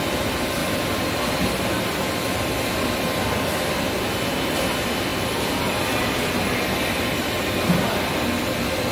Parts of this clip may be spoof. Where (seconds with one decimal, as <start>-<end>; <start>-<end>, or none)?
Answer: 0.6-3.7